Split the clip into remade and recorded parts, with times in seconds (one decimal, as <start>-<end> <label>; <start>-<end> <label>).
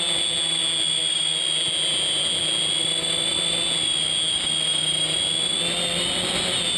0.0-6.8 recorded